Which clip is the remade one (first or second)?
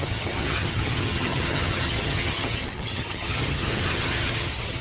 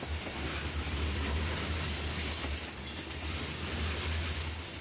first